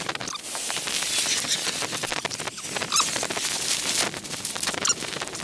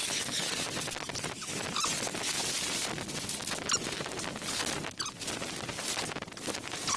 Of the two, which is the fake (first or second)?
first